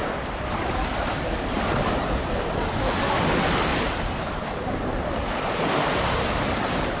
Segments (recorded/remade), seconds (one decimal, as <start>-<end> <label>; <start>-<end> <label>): 0.0-7.0 recorded